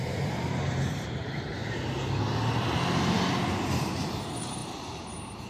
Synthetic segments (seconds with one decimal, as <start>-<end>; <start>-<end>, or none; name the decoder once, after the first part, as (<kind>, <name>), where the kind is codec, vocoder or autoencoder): 0.0-1.6 (vocoder, BigVGAN v2); 3.8-5.5